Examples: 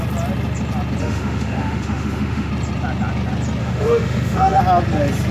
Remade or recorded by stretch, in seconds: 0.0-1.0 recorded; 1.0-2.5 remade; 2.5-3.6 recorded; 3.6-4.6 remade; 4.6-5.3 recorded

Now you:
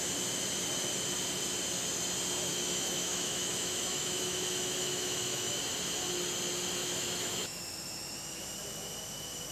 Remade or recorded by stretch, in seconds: 0.0-2.5 recorded; 2.5-5.5 remade; 5.5-6.8 recorded; 6.8-7.6 remade; 7.6-9.5 recorded